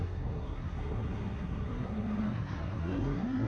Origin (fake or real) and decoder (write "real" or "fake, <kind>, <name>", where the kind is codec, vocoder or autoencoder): fake, codec, SNAC